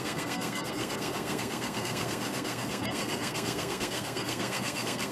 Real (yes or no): no